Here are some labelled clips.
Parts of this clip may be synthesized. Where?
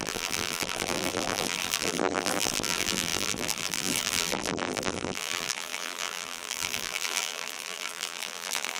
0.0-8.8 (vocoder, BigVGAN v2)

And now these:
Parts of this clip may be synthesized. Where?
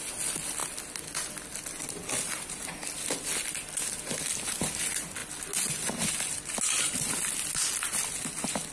none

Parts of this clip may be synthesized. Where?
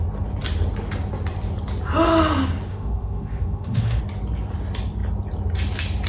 2.7-4.0 (autoencoder, DAC-VAE)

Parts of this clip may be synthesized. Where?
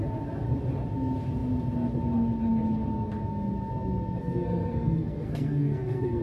4.2-6.2 (codec, SNAC)